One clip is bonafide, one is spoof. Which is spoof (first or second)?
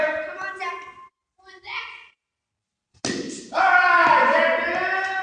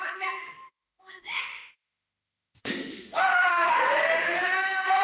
second